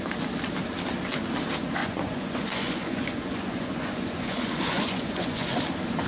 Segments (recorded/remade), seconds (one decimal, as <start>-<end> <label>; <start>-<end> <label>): 0.0-1.8 recorded; 1.8-5.5 remade; 5.5-6.1 recorded